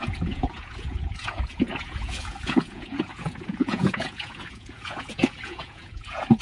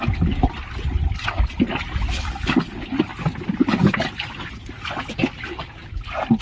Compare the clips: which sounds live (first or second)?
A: second